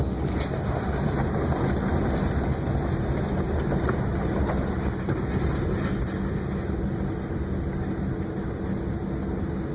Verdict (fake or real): real